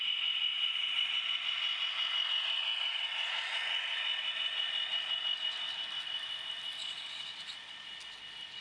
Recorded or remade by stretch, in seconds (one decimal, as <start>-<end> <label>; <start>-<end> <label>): 0.0-0.5 recorded; 0.5-1.1 remade; 1.1-6.8 recorded; 6.8-7.3 remade; 7.3-8.6 recorded

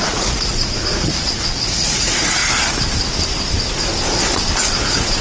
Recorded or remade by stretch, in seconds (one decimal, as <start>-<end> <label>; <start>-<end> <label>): 0.0-2.4 remade; 2.4-4.7 recorded; 4.7-5.2 remade

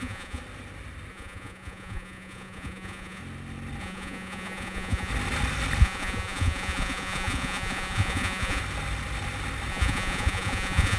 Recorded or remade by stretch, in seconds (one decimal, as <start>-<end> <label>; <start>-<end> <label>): 0.0-0.4 remade; 0.4-1.1 recorded; 1.1-3.2 remade; 3.2-3.8 recorded; 3.8-5.1 remade; 5.1-5.8 recorded; 5.8-8.6 remade; 8.6-9.7 recorded; 9.7-11.0 remade

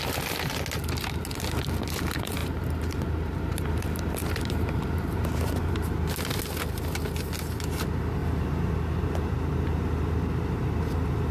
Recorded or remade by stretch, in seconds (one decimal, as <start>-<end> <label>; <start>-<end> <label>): 0.0-2.4 recorded; 2.4-5.7 remade; 5.7-8.2 recorded; 8.2-8.7 remade; 8.7-11.3 recorded